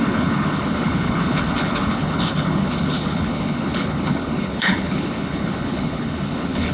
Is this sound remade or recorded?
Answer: remade